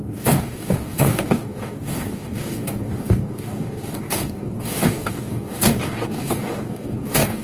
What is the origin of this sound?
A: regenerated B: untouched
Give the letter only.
A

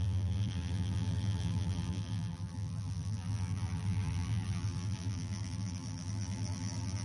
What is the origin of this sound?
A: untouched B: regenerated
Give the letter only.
B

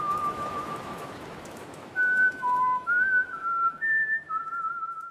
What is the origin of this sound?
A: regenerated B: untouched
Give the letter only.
A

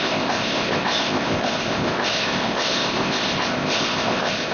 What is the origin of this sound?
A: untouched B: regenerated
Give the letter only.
B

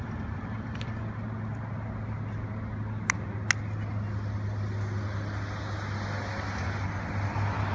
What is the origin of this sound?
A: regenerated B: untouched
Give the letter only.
B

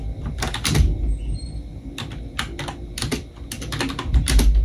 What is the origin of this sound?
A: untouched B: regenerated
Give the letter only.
A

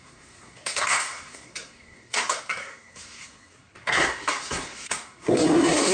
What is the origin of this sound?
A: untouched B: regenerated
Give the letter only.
B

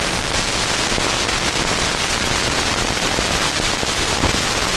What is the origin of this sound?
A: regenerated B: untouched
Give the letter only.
B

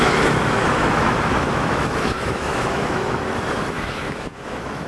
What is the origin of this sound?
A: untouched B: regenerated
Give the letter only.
B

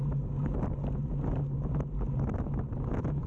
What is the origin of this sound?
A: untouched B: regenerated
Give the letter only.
A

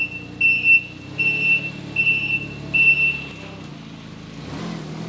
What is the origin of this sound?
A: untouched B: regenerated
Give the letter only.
A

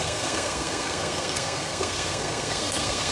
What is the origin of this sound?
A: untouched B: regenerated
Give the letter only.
B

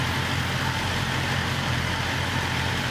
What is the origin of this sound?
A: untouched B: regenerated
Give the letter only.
A